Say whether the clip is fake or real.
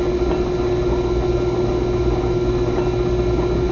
real